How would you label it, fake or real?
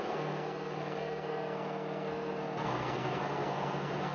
fake